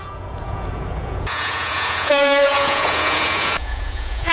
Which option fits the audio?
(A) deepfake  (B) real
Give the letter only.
A